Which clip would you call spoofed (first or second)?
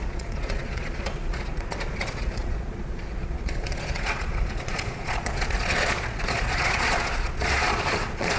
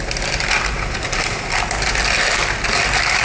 first